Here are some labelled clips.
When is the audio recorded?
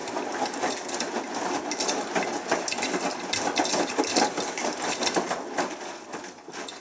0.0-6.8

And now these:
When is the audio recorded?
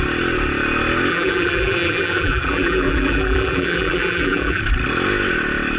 0.0-1.1; 4.6-5.8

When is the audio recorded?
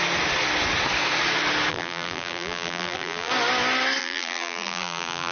0.0-1.7; 3.3-4.0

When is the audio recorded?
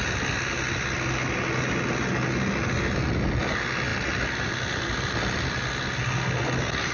0.0-6.9